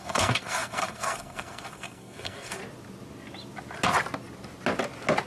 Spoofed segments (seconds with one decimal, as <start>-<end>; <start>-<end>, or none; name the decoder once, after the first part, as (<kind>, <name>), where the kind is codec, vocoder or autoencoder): 0.0-2.6 (codec, SNAC)